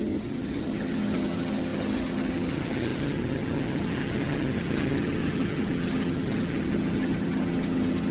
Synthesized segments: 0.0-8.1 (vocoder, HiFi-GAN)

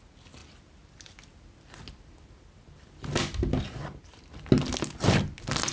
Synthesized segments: none

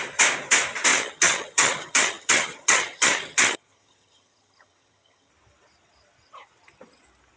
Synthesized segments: 0.9-5.3 (vocoder, HiFi-GAN)

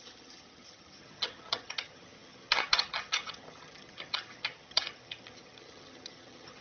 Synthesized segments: 0.0-6.6 (vocoder, HiFi-GAN)

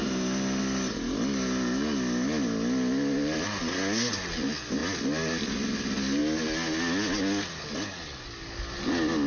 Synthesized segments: none